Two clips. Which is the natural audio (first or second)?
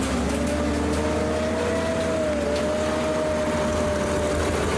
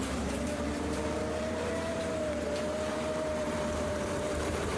first